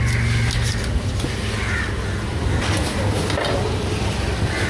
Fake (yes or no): no